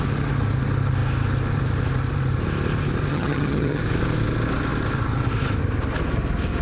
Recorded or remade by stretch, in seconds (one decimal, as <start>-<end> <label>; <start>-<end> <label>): 0.0-3.1 recorded; 3.1-3.8 remade; 3.8-6.6 recorded